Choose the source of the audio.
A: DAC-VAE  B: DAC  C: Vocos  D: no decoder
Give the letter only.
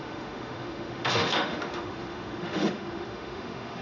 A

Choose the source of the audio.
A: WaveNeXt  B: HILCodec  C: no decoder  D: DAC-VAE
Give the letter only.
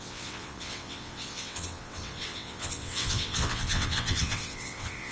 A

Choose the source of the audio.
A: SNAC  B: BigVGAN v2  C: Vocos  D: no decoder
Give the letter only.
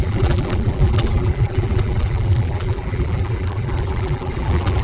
B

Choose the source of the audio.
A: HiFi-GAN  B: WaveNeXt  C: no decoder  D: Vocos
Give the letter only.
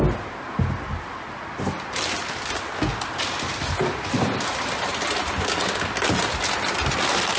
C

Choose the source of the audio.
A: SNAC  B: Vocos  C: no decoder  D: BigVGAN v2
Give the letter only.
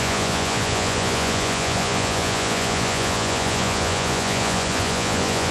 B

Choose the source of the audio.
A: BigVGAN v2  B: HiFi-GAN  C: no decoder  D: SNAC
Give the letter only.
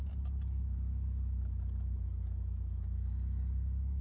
C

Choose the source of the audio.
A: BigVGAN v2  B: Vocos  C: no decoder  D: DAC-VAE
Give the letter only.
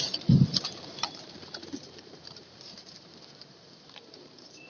A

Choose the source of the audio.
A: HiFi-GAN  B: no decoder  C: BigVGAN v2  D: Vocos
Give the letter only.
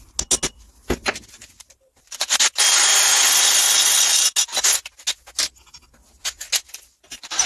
B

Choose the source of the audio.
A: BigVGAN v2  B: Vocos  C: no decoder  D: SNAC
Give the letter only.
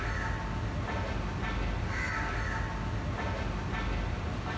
C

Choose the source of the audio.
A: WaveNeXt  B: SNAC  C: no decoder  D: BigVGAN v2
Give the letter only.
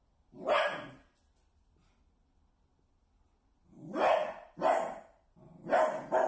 C